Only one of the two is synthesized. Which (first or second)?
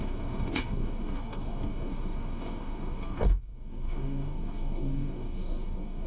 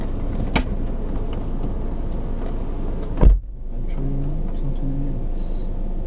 first